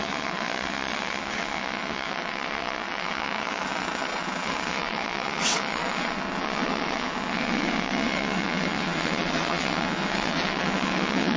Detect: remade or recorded remade